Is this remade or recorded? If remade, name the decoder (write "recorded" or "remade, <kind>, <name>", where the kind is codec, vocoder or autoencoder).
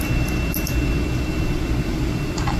recorded